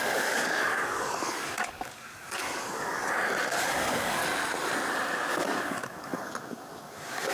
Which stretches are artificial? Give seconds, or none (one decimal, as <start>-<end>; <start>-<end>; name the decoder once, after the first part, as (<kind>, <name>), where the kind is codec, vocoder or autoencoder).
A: 0.0-3.0 (codec, DAC); 3.6-4.2; 5.3-7.3